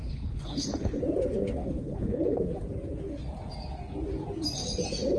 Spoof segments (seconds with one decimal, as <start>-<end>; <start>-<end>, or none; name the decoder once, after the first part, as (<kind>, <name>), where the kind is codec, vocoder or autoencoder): 0.0-1.0 (codec, HILCodec); 1.6-2.4